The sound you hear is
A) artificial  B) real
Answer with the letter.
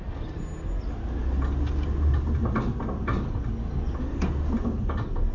B